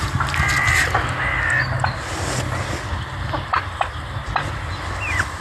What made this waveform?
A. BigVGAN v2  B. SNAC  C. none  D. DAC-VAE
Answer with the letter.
C